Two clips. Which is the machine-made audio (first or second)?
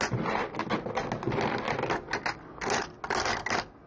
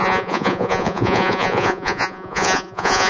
second